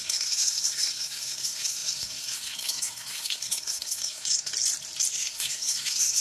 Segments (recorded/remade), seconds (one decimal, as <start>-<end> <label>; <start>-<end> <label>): 0.0-4.5 remade; 4.5-5.1 recorded; 5.1-6.2 remade